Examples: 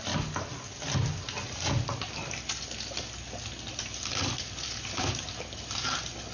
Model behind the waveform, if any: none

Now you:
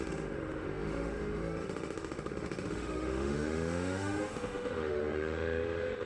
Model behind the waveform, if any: autoencoder, DAC-VAE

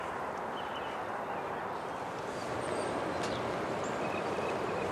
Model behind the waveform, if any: none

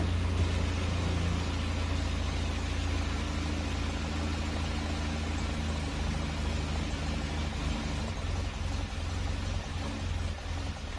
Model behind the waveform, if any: none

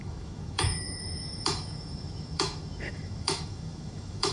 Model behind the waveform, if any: autoencoder, DAC-VAE